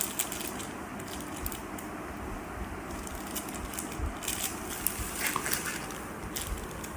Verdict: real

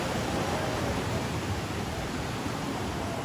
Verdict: real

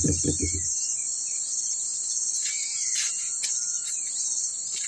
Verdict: real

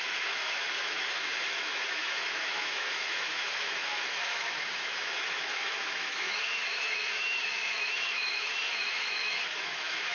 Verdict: fake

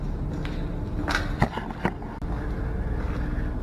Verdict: real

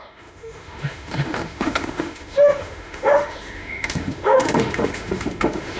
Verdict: fake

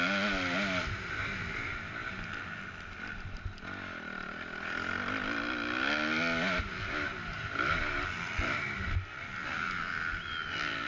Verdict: real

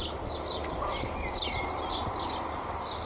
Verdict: real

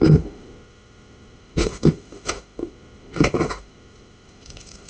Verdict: fake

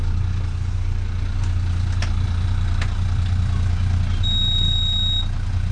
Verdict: real